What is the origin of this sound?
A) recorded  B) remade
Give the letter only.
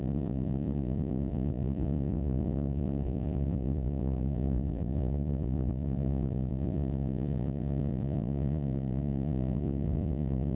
B